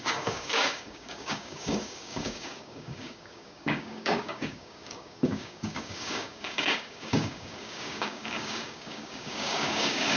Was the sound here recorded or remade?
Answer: remade